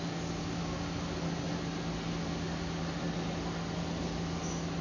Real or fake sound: real